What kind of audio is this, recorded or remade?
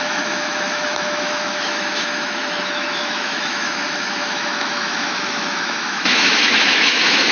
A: remade